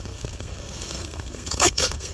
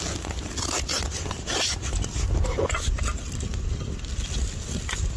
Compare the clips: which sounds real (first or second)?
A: second